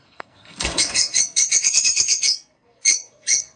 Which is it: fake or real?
fake